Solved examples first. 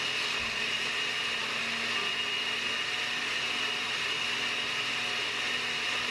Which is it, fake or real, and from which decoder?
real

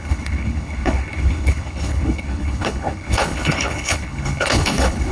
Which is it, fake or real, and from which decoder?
fake, codec, HILCodec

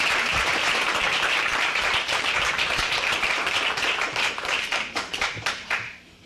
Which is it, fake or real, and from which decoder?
fake, vocoder, BigVGAN v2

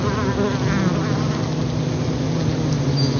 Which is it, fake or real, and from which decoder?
real